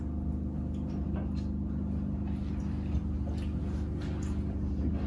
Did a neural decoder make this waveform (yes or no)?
no